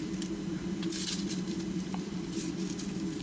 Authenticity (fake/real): fake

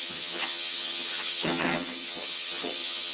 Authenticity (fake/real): fake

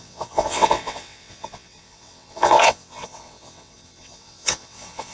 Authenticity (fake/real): fake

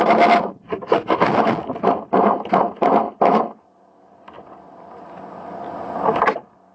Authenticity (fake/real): real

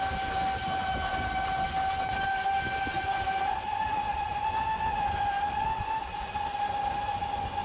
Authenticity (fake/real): real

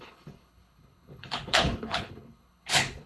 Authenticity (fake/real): fake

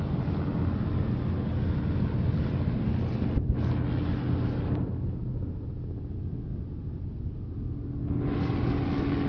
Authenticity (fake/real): real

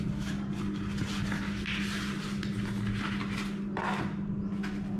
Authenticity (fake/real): real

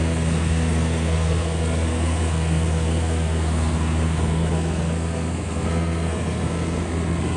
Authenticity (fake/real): fake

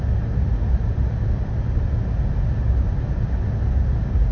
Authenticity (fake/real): real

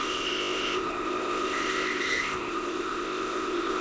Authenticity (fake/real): fake